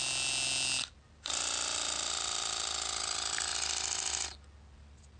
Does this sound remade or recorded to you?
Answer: recorded